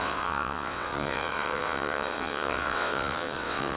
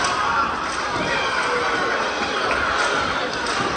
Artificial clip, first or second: first